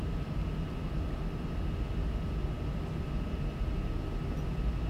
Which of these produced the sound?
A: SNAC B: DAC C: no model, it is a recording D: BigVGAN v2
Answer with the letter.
C